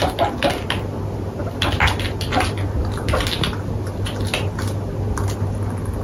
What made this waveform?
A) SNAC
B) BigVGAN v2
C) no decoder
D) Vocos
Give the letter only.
C